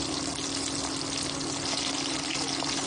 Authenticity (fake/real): real